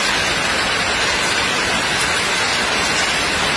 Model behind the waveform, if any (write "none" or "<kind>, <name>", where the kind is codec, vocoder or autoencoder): none